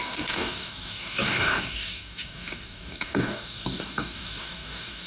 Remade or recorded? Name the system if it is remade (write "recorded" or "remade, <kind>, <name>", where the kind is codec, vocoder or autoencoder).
remade, codec, DAC